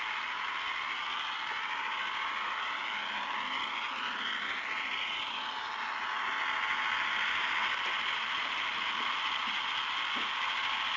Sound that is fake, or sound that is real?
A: real